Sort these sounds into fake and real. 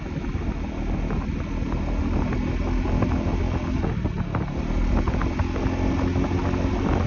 real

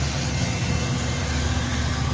real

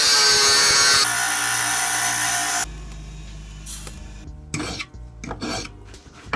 real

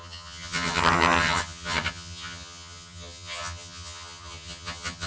fake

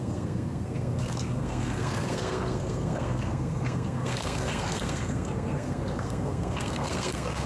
fake